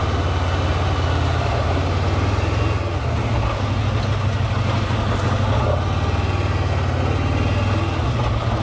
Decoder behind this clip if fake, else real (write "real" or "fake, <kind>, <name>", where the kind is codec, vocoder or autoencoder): real